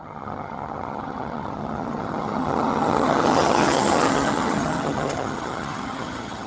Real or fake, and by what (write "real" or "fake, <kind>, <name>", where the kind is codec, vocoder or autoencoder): fake, vocoder, HiFi-GAN